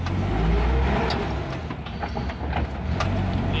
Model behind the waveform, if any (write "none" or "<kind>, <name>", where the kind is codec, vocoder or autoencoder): none